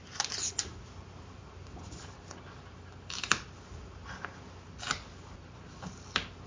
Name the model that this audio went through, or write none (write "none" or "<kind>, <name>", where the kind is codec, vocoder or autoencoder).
none